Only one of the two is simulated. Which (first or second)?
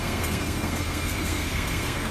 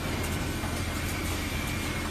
first